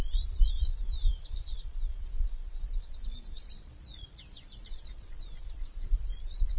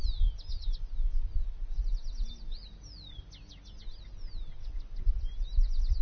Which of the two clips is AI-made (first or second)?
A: first